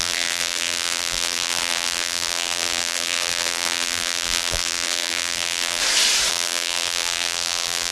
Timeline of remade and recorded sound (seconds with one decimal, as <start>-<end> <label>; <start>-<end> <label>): 0.0-5.8 remade; 5.8-6.3 recorded; 6.3-7.9 remade